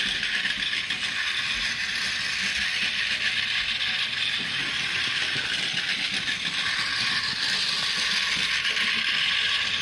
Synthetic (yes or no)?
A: no